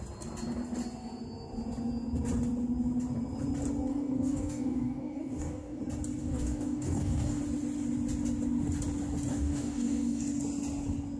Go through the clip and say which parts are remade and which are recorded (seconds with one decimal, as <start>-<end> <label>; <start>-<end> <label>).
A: 0.0-3.9 recorded; 3.9-5.8 remade; 5.8-6.2 recorded; 6.2-7.4 remade; 7.4-9.3 recorded; 9.3-10.2 remade; 10.2-11.2 recorded